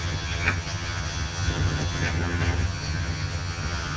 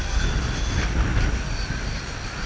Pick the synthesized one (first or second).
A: first